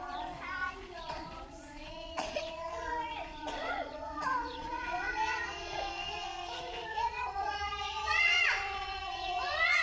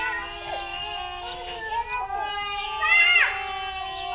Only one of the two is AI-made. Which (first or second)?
first